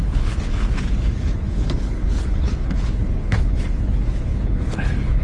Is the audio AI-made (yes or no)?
yes